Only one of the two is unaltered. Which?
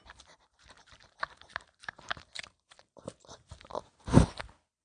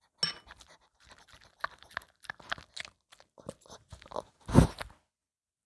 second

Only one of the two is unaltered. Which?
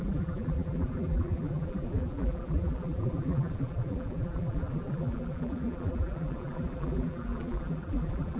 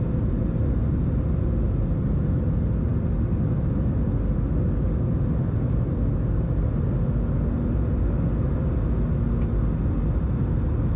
second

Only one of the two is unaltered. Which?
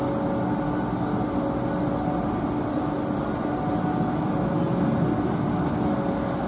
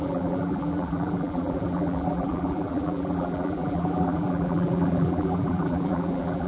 first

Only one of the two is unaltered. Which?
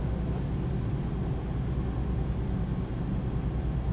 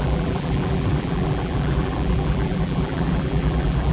first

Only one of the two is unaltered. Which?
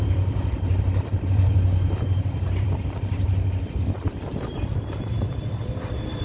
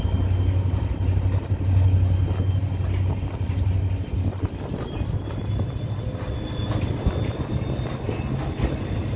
second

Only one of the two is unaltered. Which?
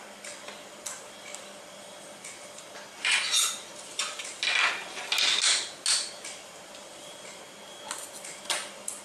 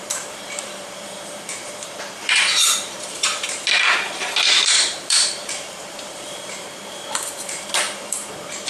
first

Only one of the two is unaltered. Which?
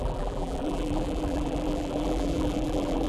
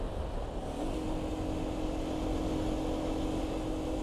second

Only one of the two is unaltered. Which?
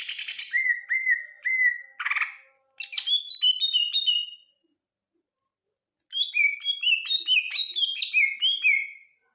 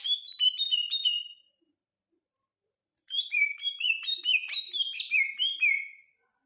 first